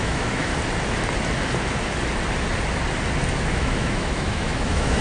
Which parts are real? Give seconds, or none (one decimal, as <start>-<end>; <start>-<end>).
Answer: 0.5-3.5